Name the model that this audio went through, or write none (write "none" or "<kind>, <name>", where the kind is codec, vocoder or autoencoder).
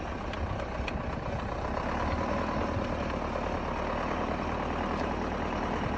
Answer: none